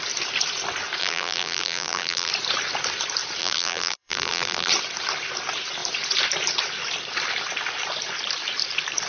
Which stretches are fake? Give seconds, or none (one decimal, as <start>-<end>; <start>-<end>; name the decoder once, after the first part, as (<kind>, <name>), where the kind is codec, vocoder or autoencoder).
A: 1.0-2.3 (vocoder, BigVGAN v2); 3.4-4.7